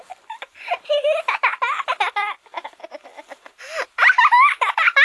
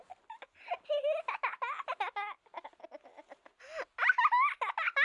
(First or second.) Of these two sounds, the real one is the second